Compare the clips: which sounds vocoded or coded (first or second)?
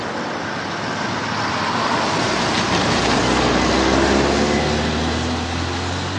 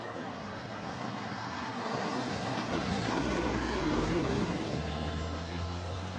second